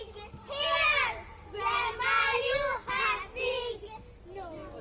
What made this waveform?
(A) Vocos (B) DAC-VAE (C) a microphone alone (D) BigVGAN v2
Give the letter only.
C